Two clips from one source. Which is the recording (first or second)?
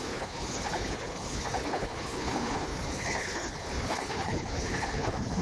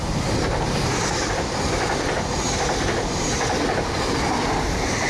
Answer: second